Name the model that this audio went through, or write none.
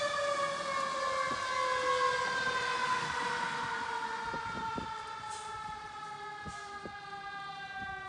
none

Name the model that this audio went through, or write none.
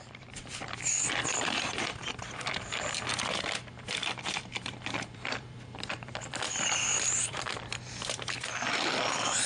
vocoder, BigVGAN v2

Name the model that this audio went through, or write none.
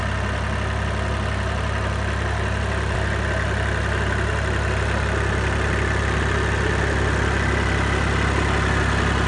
none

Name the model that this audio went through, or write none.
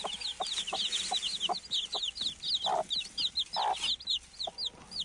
none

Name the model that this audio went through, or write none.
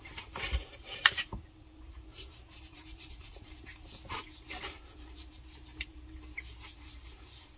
vocoder, BigVGAN v2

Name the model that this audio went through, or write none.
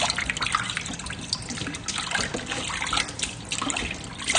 none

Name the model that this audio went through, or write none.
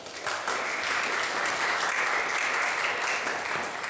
none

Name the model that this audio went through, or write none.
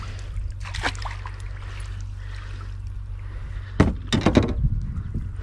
none